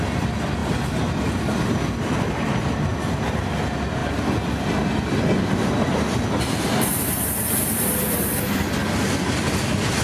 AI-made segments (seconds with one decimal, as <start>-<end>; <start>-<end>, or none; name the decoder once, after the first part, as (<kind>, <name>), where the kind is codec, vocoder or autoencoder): 0.6-2.5 (vocoder, BigVGAN v2); 2.9-3.6